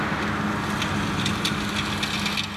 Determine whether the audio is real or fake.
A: real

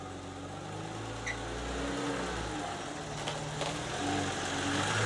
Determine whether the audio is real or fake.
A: real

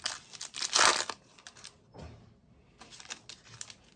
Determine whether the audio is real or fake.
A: real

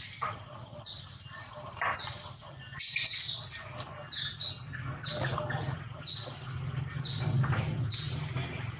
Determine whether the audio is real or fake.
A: real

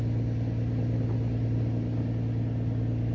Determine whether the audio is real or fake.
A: real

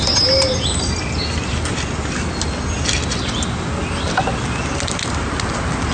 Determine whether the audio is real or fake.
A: real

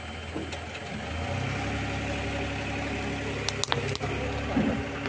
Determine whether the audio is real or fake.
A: real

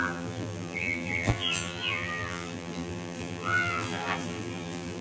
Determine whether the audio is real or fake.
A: fake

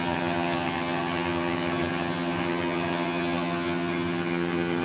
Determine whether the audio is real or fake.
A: fake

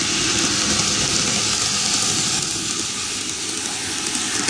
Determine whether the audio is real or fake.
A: real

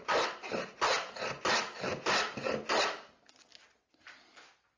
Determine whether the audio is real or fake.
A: real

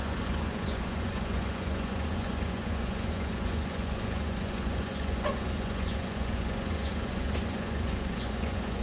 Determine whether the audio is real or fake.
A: fake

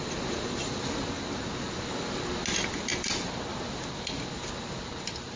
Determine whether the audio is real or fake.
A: real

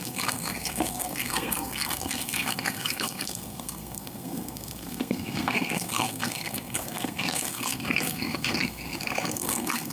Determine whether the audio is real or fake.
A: fake